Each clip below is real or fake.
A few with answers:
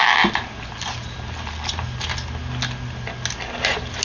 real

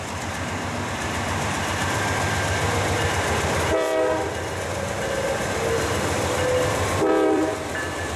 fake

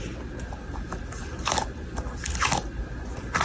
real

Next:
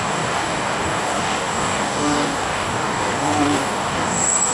fake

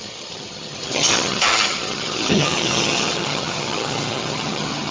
fake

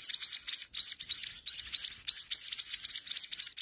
real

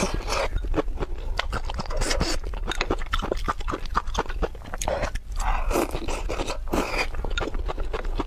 real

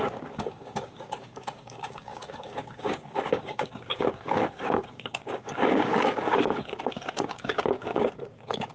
fake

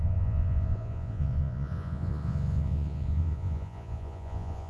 fake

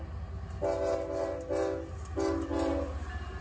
real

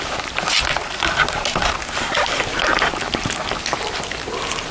real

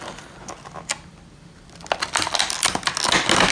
real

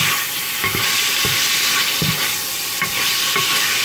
real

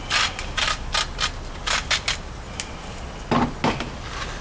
real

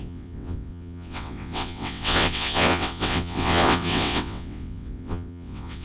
fake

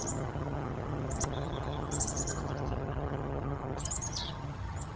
fake